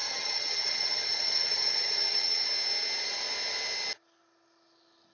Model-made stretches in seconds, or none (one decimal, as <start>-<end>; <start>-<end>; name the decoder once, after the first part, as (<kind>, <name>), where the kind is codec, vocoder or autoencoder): 0.0-2.5 (vocoder, HiFi-GAN)